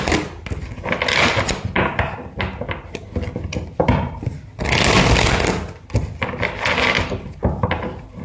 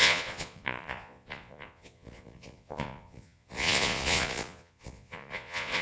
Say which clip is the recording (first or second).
first